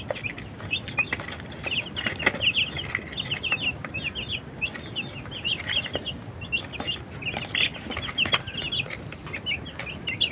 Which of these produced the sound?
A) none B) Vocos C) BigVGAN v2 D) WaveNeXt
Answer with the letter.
A